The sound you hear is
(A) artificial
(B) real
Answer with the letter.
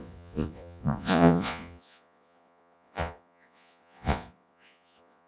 A